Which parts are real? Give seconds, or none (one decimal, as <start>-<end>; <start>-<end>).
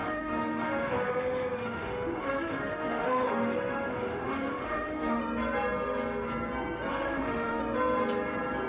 5.2-6.9; 7.6-8.7